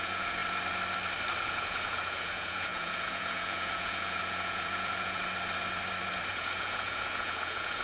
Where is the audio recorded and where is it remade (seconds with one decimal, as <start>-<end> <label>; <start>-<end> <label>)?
0.0-0.4 remade; 0.4-1.4 recorded; 1.4-5.2 remade; 5.2-6.3 recorded; 6.3-7.8 remade